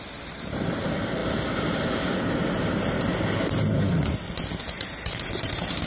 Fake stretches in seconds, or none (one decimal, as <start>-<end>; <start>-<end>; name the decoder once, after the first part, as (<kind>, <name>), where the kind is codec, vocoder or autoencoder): 0.0-3.1 (vocoder, BigVGAN v2); 4.6-5.9